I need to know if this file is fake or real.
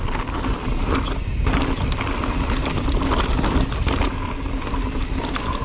real